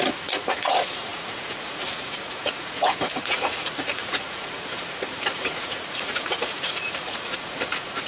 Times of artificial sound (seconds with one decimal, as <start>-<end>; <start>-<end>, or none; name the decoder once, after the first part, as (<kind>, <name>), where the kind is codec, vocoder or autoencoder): 0.0-8.1 (vocoder, Vocos)